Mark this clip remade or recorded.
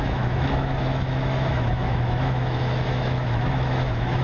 remade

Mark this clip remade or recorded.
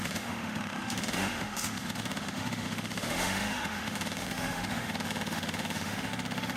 remade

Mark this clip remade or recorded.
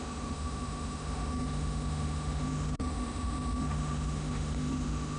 remade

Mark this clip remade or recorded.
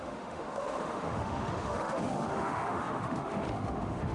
remade